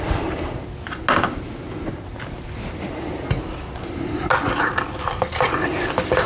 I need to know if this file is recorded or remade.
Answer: recorded